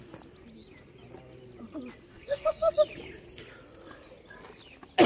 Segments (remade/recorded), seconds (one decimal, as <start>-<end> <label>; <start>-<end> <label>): 0.0-2.1 recorded; 2.1-2.7 remade; 2.7-5.1 recorded